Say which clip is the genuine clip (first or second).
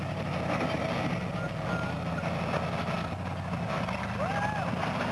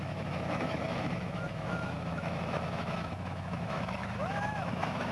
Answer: first